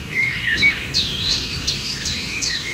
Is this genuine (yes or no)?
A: no